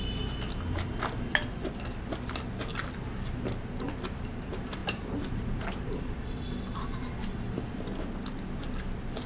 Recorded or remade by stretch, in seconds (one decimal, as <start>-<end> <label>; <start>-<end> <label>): 0.0-4.8 recorded; 4.8-6.0 remade; 6.0-9.3 recorded